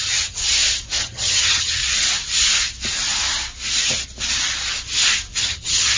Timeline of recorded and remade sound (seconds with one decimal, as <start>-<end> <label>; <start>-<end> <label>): 0.0-0.4 remade; 0.4-1.0 recorded; 1.0-1.8 remade; 1.8-5.4 recorded; 5.4-6.0 remade